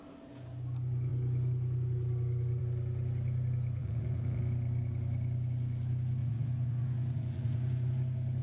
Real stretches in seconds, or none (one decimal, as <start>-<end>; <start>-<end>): 0.0-3.8; 4.4-6.2; 7.9-8.4